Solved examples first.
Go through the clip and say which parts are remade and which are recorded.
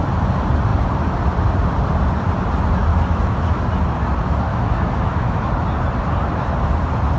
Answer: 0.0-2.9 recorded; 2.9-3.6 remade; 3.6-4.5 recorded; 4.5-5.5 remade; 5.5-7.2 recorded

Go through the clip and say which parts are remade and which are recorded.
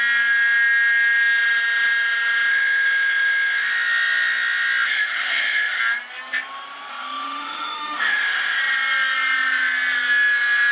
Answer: 0.0-2.5 recorded; 2.5-5.8 remade; 5.8-6.9 recorded; 6.9-8.6 remade; 8.6-10.7 recorded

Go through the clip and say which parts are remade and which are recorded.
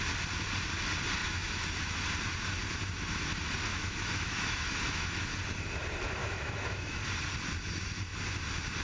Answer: 0.0-1.2 recorded; 1.2-2.0 remade; 2.0-3.7 recorded; 3.7-5.4 remade; 5.4-6.2 recorded; 6.2-7.0 remade; 7.0-8.8 recorded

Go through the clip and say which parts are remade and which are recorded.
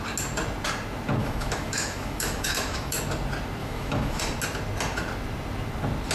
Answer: 0.0-1.2 recorded; 1.2-3.0 remade; 3.0-3.6 recorded; 3.6-4.2 remade; 4.2-6.1 recorded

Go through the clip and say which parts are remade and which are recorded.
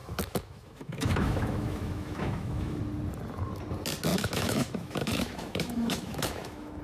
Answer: 0.0-2.8 remade; 2.8-4.1 recorded; 4.1-6.8 remade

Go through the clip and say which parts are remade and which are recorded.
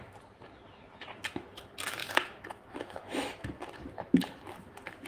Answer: 0.0-5.1 remade